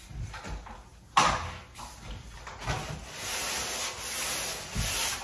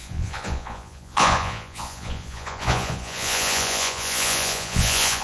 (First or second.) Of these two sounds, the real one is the first